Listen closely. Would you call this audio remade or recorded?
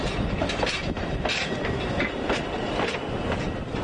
recorded